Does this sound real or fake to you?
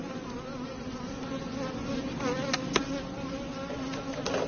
real